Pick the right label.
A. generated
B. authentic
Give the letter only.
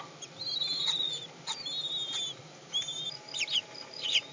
B